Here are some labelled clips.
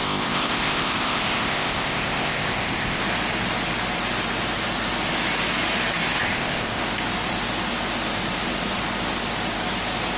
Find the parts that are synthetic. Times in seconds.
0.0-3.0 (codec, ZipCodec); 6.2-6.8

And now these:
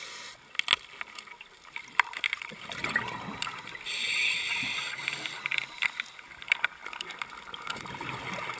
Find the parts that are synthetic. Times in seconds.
none

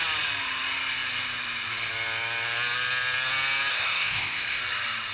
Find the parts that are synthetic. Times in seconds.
3.7-4.6 (codec, ZipCodec)

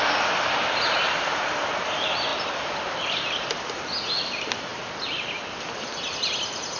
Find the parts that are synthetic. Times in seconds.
none

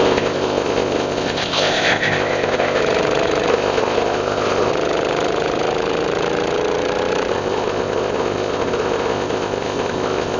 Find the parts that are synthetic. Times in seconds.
0.0-2.8 (codec, ZipCodec); 3.5-4.7; 7.3-10.4

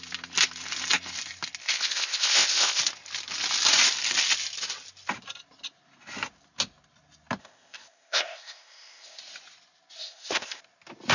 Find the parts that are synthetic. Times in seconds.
1.6-2.8 (codec, ZipCodec); 7.4-9.2; 10.0-10.6

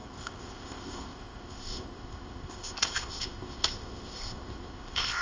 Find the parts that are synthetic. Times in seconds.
0.0-5.2 (codec, ZipCodec)

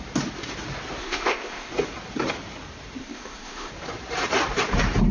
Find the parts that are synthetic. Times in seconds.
1.0-1.7 (codec, ZipCodec); 3.0-3.7